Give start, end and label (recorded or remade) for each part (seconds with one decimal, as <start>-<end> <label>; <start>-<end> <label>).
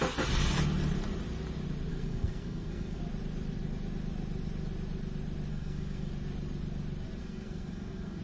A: 0.0-1.9 recorded; 1.9-3.0 remade; 3.0-5.5 recorded; 5.5-6.1 remade; 6.1-7.2 recorded; 7.2-8.2 remade